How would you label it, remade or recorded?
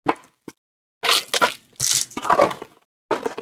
recorded